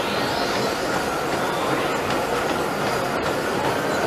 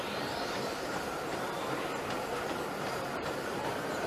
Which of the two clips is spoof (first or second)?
second